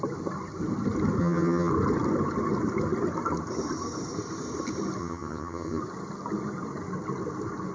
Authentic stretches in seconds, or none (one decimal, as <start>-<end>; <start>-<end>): 0.0-1.2; 1.7-5.0; 5.8-7.7